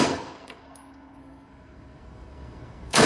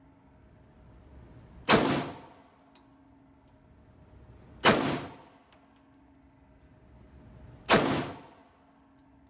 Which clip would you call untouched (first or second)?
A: second